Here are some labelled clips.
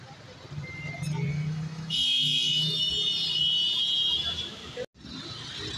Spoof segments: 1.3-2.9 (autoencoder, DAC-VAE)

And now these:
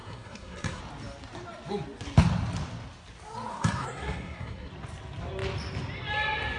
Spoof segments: 0.0-0.8 (codec, SNAC); 3.5-4.7

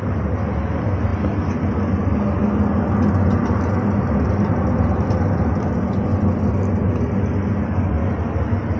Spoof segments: none

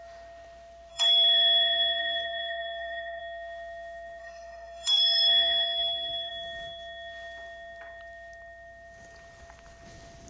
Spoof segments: 0.9-3.2 (codec, SNAC); 4.2-6.3

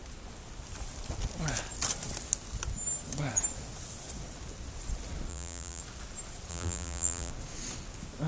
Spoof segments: 5.3-5.8 (vocoder, BigVGAN v2); 6.5-7.3

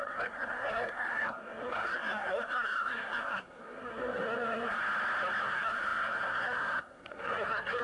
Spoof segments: 0.0-4.8 (codec, SNAC); 5.4-7.8

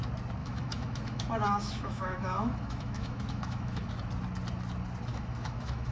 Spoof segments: 0.4-3.9 (autoencoder, DAC-VAE); 5.1-5.9

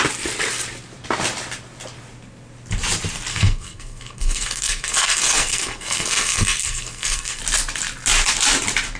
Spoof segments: 3.3-7.4 (codec, SNAC)